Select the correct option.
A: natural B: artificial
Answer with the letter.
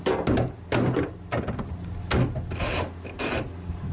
A